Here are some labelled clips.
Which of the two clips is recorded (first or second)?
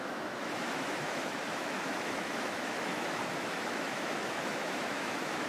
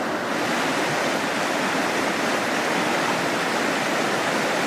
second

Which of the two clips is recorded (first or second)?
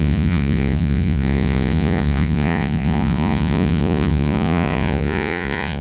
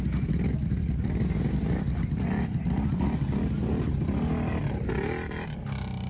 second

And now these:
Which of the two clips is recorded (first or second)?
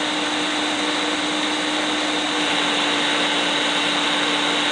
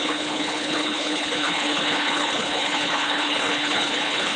first